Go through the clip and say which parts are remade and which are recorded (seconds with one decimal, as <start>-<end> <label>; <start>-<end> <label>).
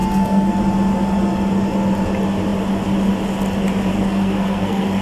0.0-0.6 remade; 0.6-3.9 recorded; 3.9-5.0 remade